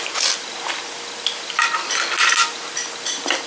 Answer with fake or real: real